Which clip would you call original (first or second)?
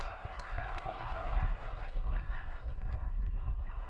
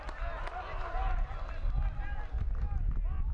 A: second